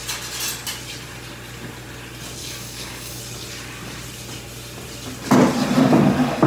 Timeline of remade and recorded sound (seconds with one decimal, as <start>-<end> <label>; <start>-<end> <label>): 0.0-2.4 recorded; 2.4-3.2 remade; 3.2-6.5 recorded